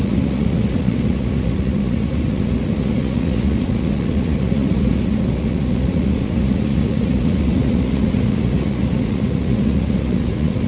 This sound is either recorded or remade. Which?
remade